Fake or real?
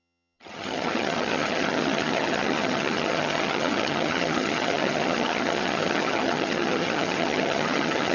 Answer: fake